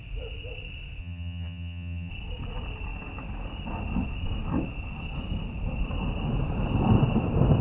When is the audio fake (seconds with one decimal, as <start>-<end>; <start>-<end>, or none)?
1.0-2.1